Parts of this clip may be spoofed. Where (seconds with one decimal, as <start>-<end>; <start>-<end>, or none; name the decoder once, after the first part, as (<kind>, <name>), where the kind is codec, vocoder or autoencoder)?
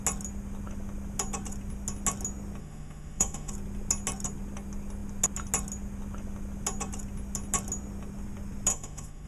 2.6-3.5 (autoencoder, DAC-VAE); 8.7-9.3